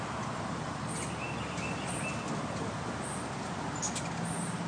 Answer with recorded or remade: recorded